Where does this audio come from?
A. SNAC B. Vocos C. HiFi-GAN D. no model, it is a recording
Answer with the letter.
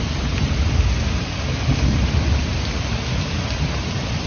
D